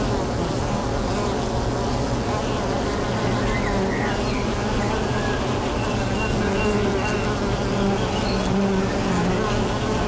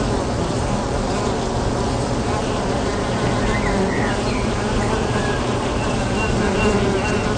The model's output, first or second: second